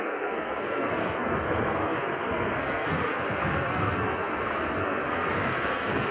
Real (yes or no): no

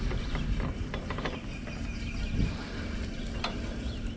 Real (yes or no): yes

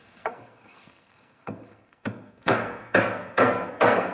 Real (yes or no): no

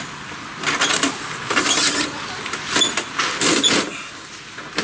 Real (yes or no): yes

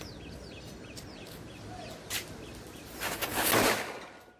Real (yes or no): yes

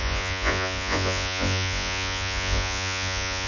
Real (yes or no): no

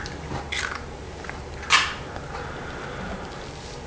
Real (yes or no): yes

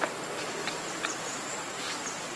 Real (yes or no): yes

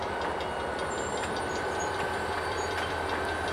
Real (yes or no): yes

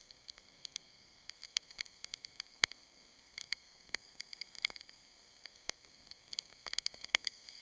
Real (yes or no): no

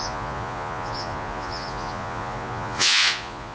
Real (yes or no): no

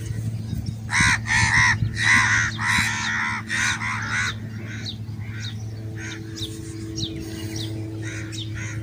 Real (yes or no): yes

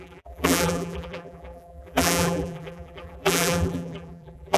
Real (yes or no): no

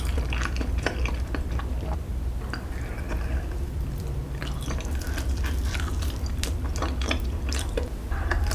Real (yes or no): no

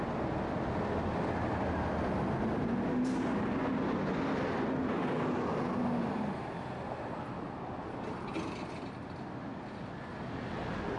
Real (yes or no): yes